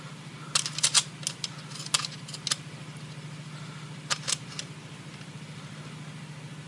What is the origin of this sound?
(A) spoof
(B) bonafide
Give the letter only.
B